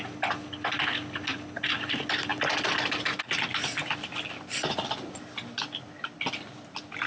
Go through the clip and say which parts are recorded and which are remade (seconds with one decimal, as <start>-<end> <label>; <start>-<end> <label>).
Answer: 0.0-7.1 recorded